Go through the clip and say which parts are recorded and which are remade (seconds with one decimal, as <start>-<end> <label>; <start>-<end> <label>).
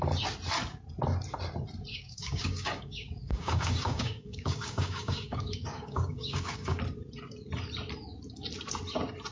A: 0.0-1.9 recorded; 1.9-6.8 remade; 6.8-9.3 recorded